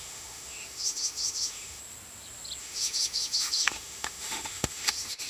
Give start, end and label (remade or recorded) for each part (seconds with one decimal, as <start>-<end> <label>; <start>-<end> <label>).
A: 0.0-1.8 remade; 1.8-2.6 recorded; 2.6-5.3 remade